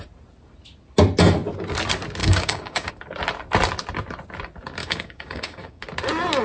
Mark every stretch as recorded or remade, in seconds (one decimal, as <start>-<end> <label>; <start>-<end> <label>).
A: 0.0-2.2 recorded; 2.2-2.9 remade; 2.9-4.8 recorded; 4.8-5.8 remade; 5.8-6.4 recorded